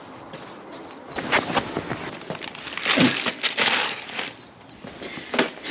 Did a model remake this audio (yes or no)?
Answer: no